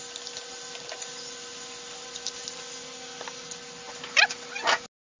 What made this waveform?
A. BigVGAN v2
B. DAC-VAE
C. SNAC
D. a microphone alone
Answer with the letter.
D